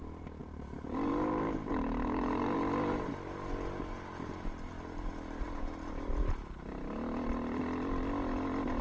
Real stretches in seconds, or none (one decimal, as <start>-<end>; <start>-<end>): 0.0-0.4; 3.1-8.8

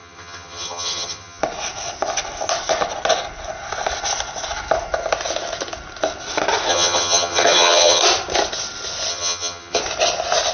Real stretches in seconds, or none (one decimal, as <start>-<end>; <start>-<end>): 1.4-6.7; 8.0-9.1; 9.8-10.5

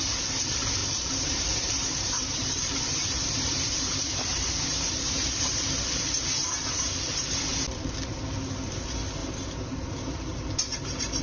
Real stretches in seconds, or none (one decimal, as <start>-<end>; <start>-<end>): 0.0-0.8; 5.8-9.2; 9.7-11.2

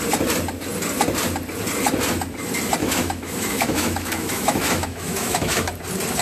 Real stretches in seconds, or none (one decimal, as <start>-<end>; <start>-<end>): 0.0-2.8; 5.6-6.2

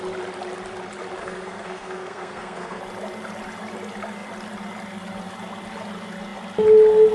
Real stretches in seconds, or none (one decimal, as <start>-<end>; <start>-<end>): 0.0-1.2; 2.8-7.1

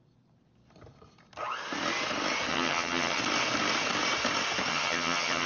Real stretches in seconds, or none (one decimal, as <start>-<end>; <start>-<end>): 0.0-2.5; 3.2-4.7